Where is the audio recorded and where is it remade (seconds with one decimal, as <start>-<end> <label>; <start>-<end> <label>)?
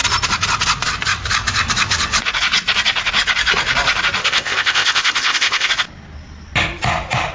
0.0-4.2 recorded; 4.2-5.7 remade; 5.7-7.3 recorded